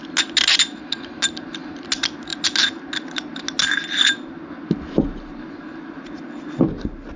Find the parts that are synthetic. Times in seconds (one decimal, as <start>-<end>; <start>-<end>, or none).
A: none